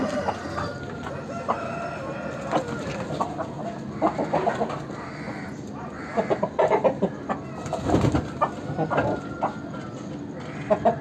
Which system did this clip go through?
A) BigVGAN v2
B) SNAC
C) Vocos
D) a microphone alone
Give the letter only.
D